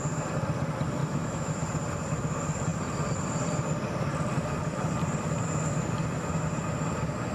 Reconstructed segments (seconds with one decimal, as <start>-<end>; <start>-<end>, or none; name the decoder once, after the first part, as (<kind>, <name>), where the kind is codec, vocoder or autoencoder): 1.0-1.5 (autoencoder, DAC-VAE)